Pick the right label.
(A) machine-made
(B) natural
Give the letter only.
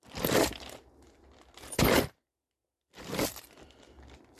B